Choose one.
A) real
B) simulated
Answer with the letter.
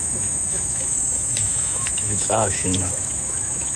B